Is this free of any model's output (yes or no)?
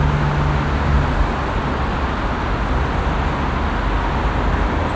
yes